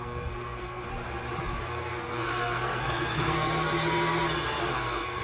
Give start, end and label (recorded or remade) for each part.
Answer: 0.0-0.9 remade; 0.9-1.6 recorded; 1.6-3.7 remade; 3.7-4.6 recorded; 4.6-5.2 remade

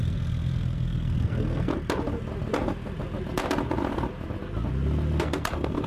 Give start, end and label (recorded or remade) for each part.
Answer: 0.0-1.7 remade; 1.7-5.2 recorded; 5.2-5.9 remade

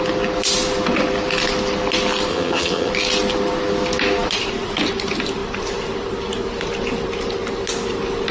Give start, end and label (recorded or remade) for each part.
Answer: 0.0-2.3 recorded; 2.3-2.9 remade; 2.9-8.3 recorded

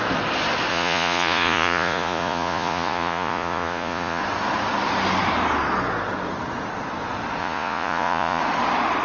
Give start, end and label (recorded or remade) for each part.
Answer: 0.0-0.7 recorded; 0.7-4.2 remade; 4.2-7.4 recorded; 7.4-8.4 remade; 8.4-9.0 recorded

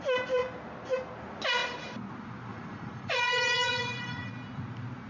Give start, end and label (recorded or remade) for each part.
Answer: 0.0-2.5 recorded; 2.5-4.3 remade; 4.3-5.1 recorded